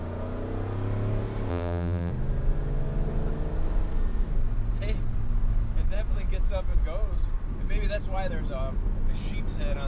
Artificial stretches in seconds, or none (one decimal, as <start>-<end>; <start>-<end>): 1.5-2.1